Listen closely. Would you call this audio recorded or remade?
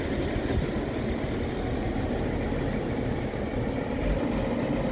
recorded